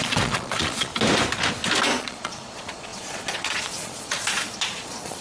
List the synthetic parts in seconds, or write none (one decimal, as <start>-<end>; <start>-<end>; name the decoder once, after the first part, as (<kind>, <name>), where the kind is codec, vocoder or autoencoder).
0.0-0.9 (vocoder, Vocos); 2.0-5.2